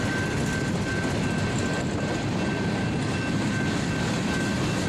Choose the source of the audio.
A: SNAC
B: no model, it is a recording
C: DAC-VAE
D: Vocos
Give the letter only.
B